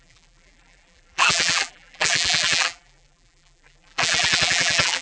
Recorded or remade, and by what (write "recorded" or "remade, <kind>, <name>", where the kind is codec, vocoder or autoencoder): remade, vocoder, BigVGAN v2